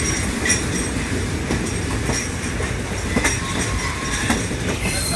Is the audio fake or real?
fake